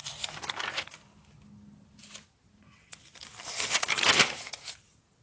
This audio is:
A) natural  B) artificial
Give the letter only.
A